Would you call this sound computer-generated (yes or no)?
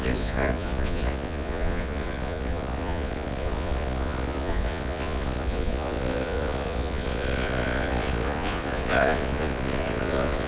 yes